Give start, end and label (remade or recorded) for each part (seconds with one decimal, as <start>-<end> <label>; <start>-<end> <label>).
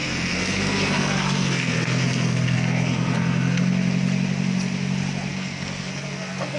0.0-3.6 remade; 3.6-5.3 recorded; 5.3-6.6 remade